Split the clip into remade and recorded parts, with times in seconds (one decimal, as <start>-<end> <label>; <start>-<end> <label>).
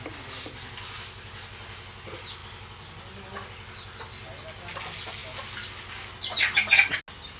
0.0-7.4 recorded